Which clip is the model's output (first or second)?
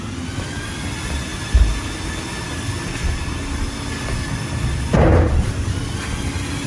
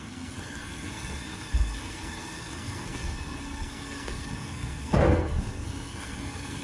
second